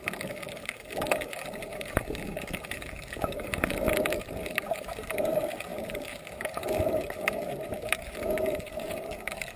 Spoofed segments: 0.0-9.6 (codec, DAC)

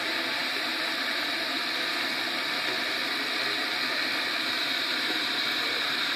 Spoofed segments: 0.4-1.6 (vocoder, BigVGAN v2); 4.6-5.4